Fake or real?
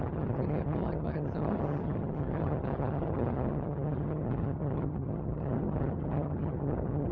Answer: fake